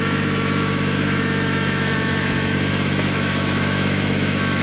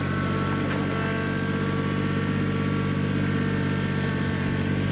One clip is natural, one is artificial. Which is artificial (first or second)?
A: first